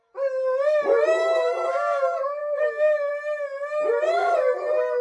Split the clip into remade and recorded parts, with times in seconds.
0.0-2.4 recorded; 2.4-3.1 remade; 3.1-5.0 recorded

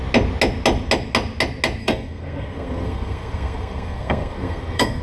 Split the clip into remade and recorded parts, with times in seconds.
0.0-1.8 recorded; 1.8-5.0 remade

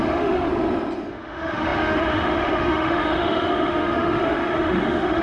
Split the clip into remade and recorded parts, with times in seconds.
0.0-0.5 remade; 0.5-1.1 recorded; 1.1-5.2 remade

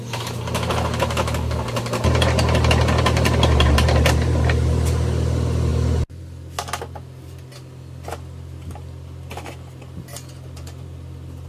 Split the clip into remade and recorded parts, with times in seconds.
0.0-11.5 recorded

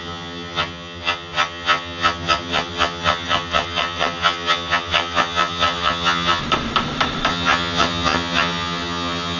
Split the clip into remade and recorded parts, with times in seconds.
0.0-6.4 remade; 6.4-7.3 recorded; 7.3-9.4 remade

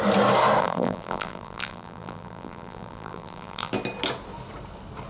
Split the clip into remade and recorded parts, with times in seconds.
0.0-0.6 recorded; 0.6-3.7 remade; 3.7-5.1 recorded

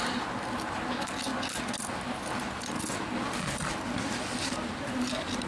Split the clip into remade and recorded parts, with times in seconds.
0.0-5.5 recorded